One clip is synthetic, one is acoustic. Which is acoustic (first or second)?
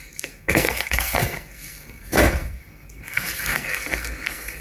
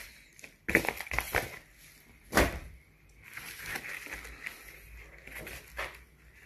second